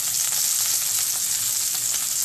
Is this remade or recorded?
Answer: recorded